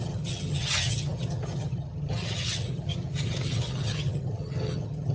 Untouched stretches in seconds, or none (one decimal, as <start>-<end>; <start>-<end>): none